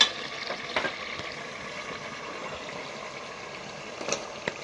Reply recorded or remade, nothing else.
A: recorded